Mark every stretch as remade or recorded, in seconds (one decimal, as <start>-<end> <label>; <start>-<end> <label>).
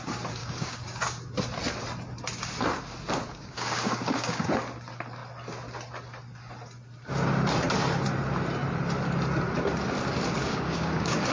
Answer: 0.0-0.4 recorded; 0.4-1.0 remade; 1.0-3.3 recorded; 3.3-4.5 remade; 4.5-10.4 recorded; 10.4-11.3 remade